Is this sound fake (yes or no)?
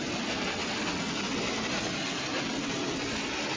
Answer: no